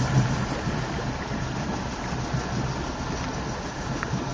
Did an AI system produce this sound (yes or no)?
no